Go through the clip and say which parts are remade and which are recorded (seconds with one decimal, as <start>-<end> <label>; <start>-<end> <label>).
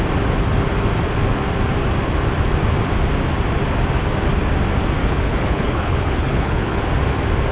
0.0-5.0 recorded; 5.0-6.8 remade; 6.8-7.5 recorded